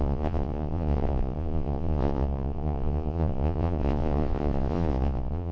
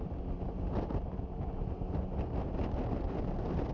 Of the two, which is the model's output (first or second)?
first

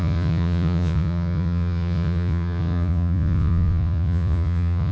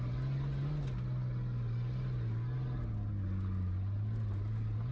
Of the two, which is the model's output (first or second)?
first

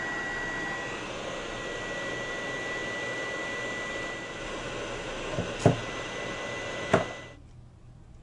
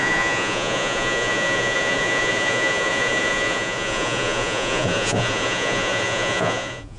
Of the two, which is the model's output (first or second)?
second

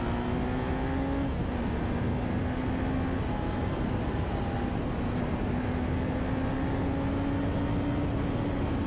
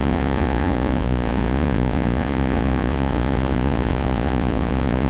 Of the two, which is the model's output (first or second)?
second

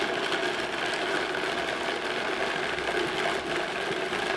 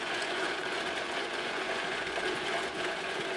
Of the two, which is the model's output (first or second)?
second